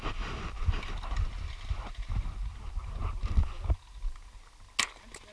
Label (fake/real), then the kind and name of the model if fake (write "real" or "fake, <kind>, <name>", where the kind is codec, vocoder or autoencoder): real